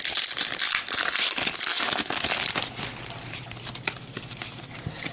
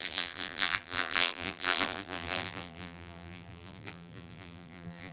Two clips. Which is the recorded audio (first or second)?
first